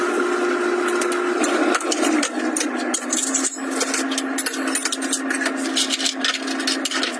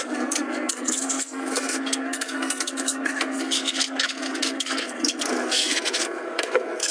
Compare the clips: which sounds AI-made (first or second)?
second